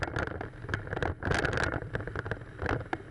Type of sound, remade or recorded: recorded